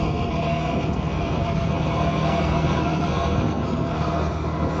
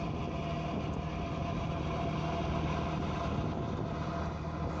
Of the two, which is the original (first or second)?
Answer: second